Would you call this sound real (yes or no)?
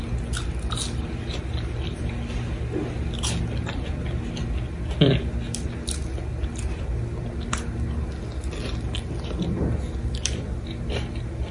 yes